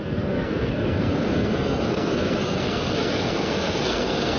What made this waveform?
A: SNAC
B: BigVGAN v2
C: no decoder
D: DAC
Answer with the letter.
A